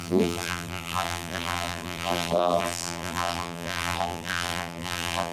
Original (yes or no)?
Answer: no